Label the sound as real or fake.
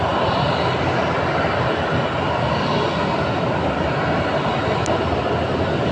real